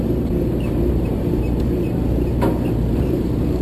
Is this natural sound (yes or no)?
no